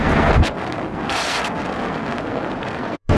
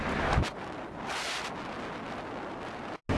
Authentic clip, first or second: second